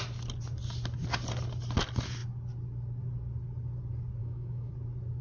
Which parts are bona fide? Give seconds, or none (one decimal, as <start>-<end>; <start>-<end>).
0.0-4.2; 4.7-5.2